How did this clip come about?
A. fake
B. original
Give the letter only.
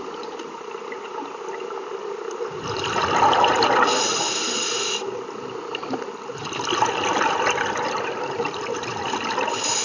B